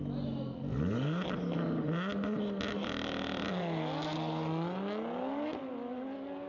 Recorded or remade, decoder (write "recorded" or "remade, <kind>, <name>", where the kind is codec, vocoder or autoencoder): recorded